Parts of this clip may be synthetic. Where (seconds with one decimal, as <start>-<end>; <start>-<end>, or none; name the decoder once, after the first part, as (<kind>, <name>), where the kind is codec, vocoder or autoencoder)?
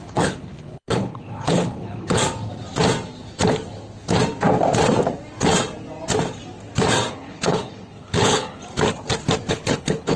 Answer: 0.0-2.2 (codec, HILCodec); 7.1-8.6; 9.5-10.2